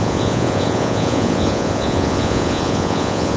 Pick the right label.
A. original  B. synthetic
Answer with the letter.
B